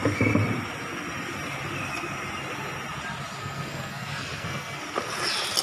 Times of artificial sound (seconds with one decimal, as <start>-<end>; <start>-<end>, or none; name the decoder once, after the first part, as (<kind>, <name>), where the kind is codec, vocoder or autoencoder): 3.4-4.8 (codec, SNAC)